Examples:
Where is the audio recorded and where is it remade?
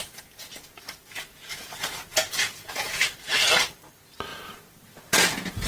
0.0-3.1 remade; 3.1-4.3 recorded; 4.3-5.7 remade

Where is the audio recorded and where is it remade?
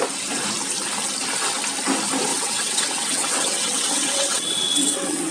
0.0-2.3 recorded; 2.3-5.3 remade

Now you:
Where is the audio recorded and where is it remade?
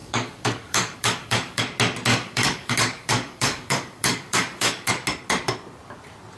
0.0-1.6 remade; 1.6-2.1 recorded; 2.1-4.9 remade; 4.9-6.4 recorded